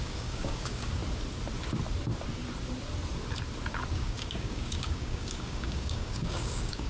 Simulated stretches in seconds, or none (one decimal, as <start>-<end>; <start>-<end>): 0.0-1.0; 3.9-6.9